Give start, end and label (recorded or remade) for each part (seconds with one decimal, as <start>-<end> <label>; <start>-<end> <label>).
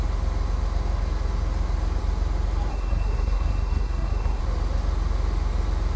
0.0-2.7 recorded; 2.7-4.4 remade; 4.4-6.0 recorded